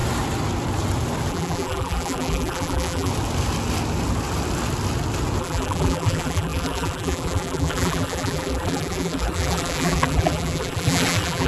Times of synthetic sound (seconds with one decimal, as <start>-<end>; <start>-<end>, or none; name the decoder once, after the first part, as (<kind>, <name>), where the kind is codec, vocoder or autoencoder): 1.3-3.1 (vocoder, BigVGAN v2); 5.4-11.5